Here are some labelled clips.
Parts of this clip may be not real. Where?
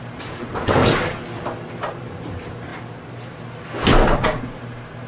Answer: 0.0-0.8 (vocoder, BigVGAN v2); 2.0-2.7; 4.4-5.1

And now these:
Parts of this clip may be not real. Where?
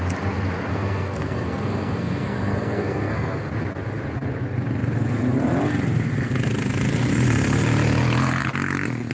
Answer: 0.7-3.5 (codec, SNAC)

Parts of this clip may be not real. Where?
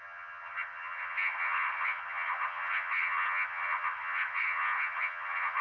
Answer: 0.0-5.6 (vocoder, HiFi-GAN)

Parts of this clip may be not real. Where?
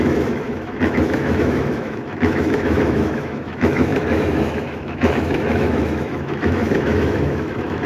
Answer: 0.0-7.9 (autoencoder, DAC-VAE)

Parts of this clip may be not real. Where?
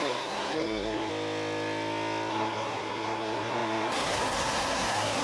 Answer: 0.0-1.1 (codec, SNAC); 2.3-5.2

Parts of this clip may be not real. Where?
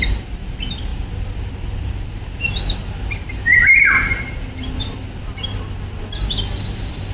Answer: none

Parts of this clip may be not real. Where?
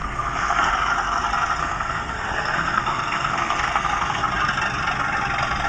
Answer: 0.0-0.7 (codec, SNAC); 1.6-4.2